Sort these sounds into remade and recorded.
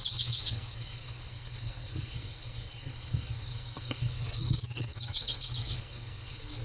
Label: remade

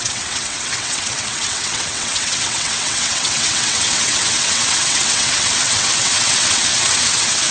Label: remade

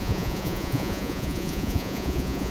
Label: remade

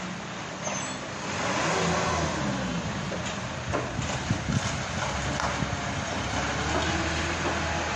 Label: recorded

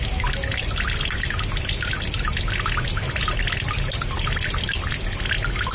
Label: recorded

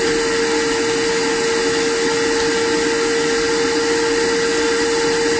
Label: recorded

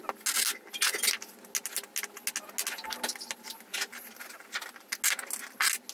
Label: recorded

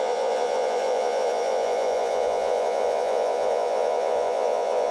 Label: remade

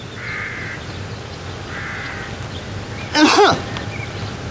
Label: recorded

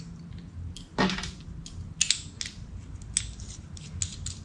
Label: recorded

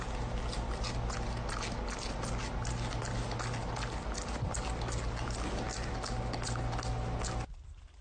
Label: recorded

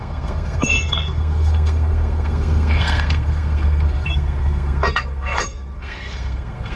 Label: remade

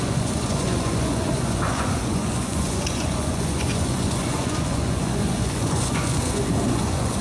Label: remade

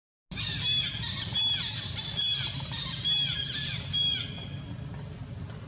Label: recorded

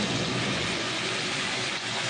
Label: remade